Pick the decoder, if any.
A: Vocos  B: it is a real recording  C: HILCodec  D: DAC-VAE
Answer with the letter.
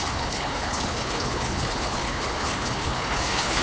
C